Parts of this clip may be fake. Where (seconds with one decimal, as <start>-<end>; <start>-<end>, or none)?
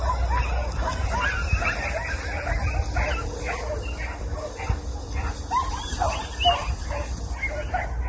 none